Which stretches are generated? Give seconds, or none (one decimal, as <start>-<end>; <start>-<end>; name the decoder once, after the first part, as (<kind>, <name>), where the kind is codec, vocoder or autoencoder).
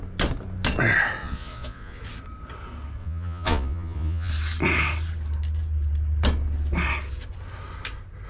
1.2-2.0 (vocoder, Vocos); 3.0-4.3